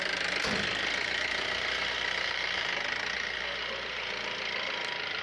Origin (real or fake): fake